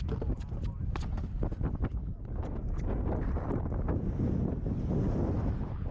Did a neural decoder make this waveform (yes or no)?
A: no